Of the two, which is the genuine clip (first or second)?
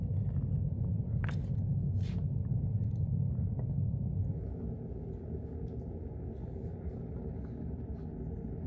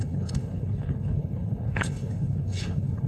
first